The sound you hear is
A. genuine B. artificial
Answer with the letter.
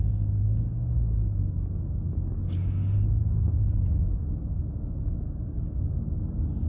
B